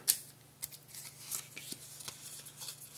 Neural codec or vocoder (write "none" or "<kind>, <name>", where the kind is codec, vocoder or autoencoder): none